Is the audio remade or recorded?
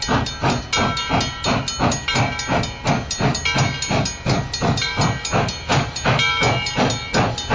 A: recorded